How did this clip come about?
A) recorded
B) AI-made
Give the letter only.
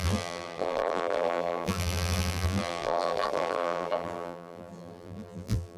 B